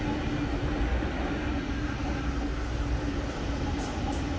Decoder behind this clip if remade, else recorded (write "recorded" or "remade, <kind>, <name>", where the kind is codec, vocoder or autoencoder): recorded